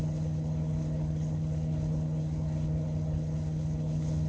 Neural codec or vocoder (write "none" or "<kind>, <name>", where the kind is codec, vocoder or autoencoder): codec, HILCodec